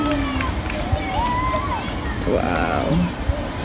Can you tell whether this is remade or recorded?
recorded